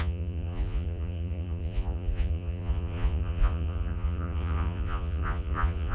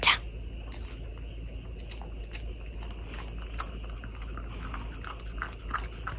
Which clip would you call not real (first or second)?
first